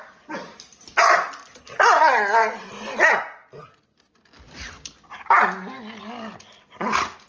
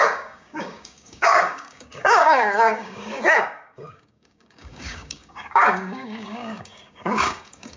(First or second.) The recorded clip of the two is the first